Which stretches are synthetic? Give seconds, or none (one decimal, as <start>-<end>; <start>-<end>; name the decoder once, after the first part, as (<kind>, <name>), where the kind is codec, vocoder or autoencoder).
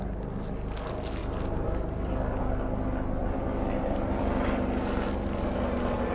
1.2-2.4 (vocoder, BigVGAN v2); 3.2-4.8